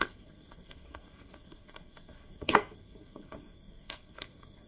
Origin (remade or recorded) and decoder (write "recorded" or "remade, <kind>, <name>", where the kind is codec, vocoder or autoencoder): remade, codec, SNAC